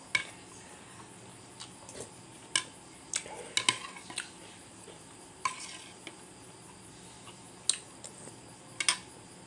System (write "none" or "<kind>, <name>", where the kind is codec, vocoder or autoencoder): none